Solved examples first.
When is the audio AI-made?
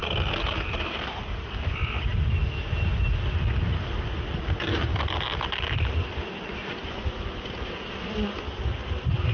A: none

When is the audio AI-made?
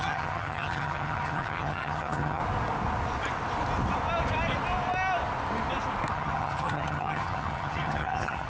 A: 0.0-2.4; 6.1-8.5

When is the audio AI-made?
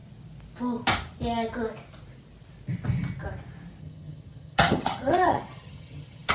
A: 3.8-6.3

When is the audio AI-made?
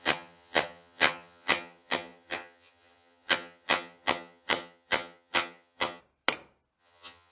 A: 0.0-6.0; 6.8-7.3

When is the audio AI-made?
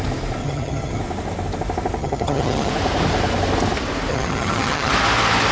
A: 0.4-1.0; 2.0-2.7; 4.1-4.9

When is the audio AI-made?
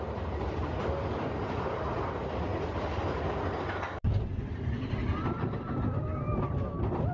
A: none